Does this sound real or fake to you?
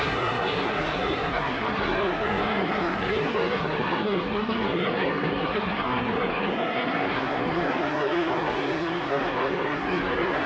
fake